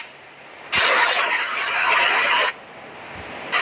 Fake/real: real